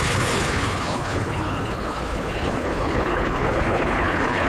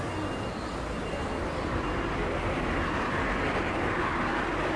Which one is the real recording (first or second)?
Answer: second